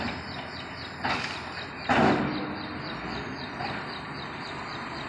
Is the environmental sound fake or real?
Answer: real